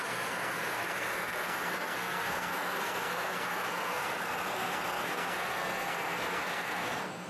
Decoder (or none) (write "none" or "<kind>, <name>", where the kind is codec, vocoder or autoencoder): codec, SNAC